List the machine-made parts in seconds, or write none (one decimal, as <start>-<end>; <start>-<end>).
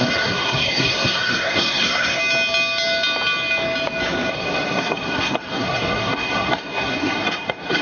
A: 0.0-2.2; 4.3-7.8